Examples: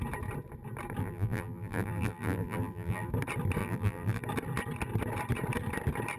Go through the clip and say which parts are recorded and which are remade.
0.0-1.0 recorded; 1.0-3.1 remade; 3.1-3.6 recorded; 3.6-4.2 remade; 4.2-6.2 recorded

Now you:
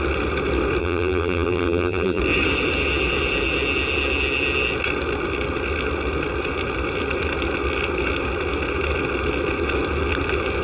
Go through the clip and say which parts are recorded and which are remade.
0.0-0.8 recorded; 0.8-2.2 remade; 2.2-10.6 recorded